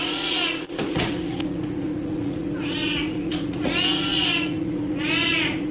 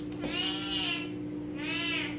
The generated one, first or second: first